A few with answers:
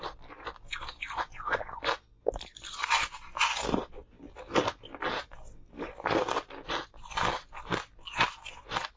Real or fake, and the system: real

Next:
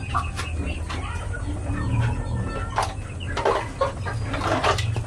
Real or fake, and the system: real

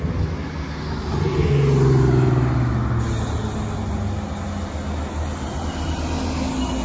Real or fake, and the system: real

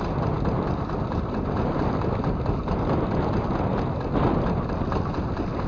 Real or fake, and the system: real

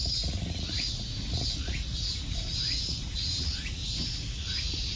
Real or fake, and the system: fake, vocoder, Vocos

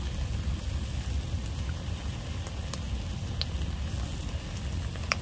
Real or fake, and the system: real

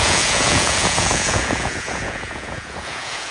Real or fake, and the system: fake, vocoder, Vocos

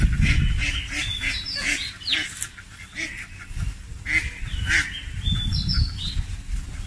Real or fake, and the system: real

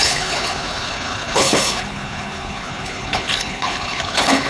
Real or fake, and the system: fake, codec, HILCodec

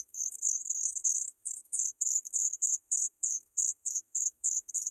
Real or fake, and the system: fake, codec, SNAC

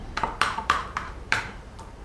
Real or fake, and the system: fake, vocoder, BigVGAN v2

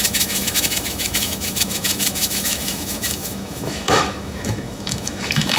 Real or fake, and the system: fake, autoencoder, DAC-VAE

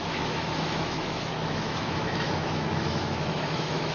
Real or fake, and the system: fake, autoencoder, DAC-VAE